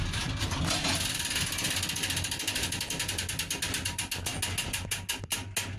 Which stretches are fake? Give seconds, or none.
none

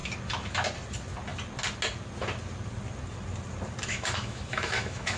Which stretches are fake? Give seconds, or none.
3.9-5.2 (autoencoder, DAC-VAE)

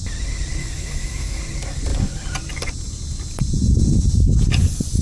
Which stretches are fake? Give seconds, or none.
0.6-1.4 (autoencoder, DAC-VAE)